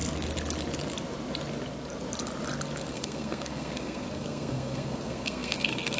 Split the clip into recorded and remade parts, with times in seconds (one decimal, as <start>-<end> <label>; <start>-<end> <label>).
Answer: 0.0-2.9 recorded; 2.9-6.0 remade